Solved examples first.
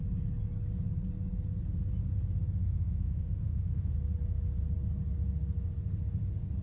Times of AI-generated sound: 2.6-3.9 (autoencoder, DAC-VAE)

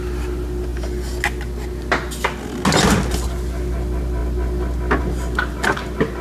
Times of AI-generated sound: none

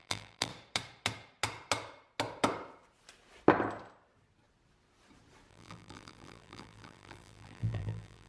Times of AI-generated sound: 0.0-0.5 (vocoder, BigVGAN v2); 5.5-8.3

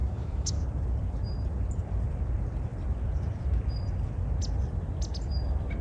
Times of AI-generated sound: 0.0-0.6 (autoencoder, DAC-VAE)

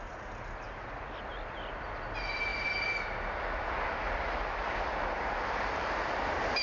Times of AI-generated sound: none

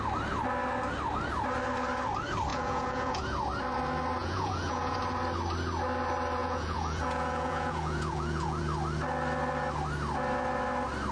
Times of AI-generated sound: 2.5-3.2 (vocoder, Vocos); 4.2-5.0; 6.4-8.6